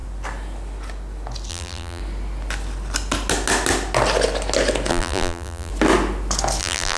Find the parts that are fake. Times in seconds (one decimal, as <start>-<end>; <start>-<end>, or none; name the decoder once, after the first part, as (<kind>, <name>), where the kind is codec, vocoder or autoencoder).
1.5-2.0 (vocoder, BigVGAN v2); 4.9-5.7; 6.6-7.0